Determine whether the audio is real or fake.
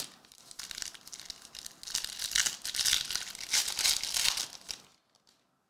real